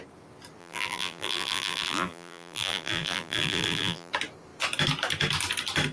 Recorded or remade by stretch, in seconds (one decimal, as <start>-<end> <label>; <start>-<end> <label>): 0.0-0.6 recorded; 0.6-4.1 remade; 4.1-5.9 recorded